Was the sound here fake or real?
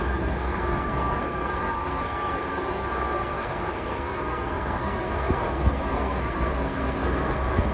fake